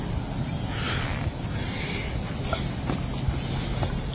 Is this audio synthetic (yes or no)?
no